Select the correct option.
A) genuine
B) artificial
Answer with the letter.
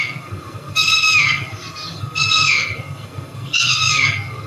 B